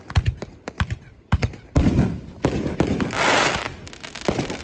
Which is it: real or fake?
real